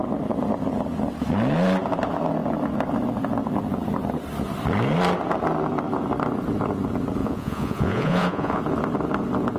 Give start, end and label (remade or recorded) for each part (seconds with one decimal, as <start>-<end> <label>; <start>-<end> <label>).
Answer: 0.0-7.2 recorded; 7.2-8.6 remade; 8.6-9.6 recorded